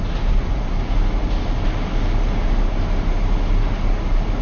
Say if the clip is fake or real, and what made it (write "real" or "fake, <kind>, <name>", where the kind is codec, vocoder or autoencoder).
real